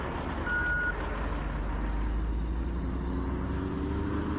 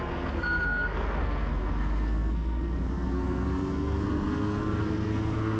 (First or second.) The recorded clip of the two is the first